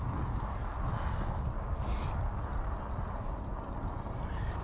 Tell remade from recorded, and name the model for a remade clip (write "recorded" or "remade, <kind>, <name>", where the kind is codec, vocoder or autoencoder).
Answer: recorded